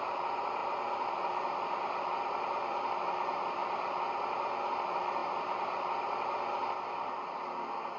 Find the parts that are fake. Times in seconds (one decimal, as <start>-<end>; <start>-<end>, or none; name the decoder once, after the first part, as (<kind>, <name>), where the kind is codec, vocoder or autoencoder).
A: 0.0-3.6 (vocoder, BigVGAN v2); 4.7-8.0